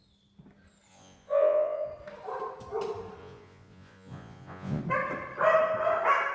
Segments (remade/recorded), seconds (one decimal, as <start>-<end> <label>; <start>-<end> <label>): 0.0-0.9 recorded; 0.9-1.9 remade; 1.9-3.2 recorded; 3.2-4.8 remade; 4.8-6.3 recorded